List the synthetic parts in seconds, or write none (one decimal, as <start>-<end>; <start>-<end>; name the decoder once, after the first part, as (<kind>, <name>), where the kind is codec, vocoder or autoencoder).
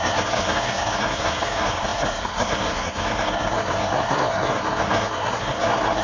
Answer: 0.0-6.0 (codec, SNAC)